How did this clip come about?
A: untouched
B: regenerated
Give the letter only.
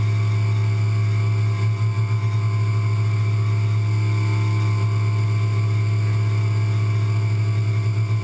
A